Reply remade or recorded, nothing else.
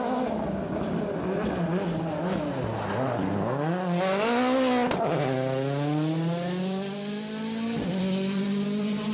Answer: recorded